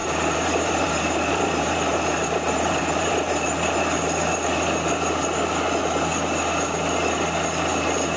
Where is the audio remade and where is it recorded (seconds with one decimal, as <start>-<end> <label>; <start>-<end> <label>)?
0.0-4.0 remade; 4.0-8.2 recorded